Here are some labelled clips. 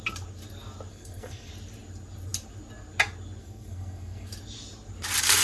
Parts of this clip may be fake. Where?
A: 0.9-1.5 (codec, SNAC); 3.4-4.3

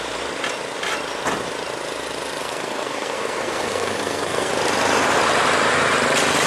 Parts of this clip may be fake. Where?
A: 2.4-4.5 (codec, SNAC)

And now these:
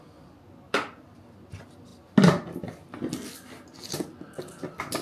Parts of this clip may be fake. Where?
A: none

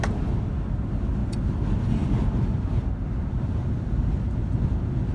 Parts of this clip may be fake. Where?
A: none

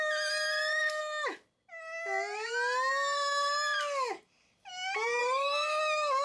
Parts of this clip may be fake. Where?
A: 5.2-5.8 (codec, SNAC)